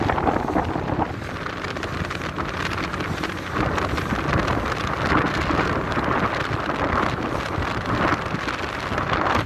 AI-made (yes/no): no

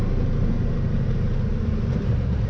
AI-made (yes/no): yes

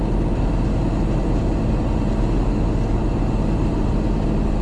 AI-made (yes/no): no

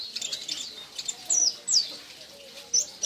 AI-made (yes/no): no